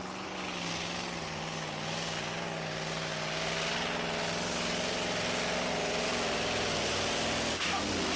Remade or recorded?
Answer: recorded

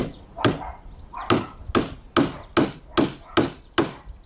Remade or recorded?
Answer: recorded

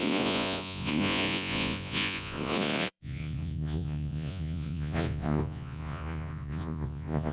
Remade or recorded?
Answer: remade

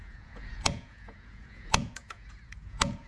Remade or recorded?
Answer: remade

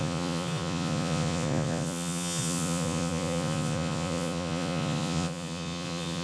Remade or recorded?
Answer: remade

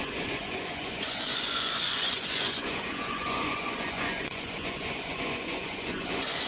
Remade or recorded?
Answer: remade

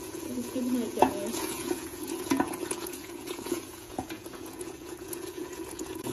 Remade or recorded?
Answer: remade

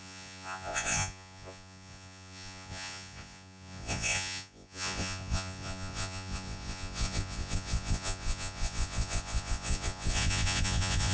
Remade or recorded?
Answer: remade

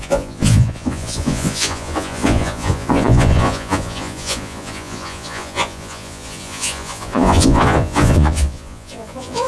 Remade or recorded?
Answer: remade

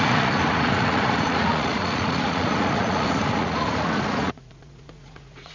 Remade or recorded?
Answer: remade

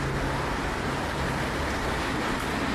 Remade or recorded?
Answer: recorded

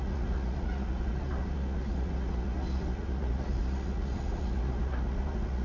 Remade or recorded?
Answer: remade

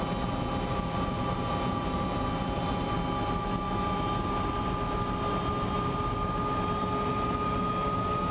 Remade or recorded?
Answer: recorded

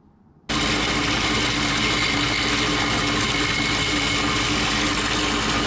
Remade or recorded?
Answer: recorded